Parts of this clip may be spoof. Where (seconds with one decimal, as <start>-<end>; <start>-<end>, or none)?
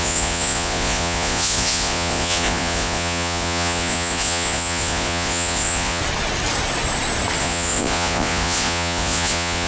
0.0-6.0; 7.4-9.7